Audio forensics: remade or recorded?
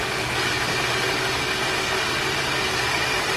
recorded